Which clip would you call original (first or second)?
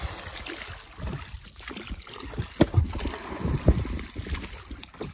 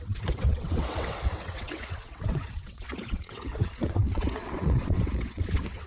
first